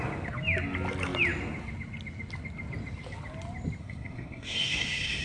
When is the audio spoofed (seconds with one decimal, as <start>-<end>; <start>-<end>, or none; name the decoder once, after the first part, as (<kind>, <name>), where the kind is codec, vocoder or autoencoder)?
3.8-5.2 (codec, SNAC)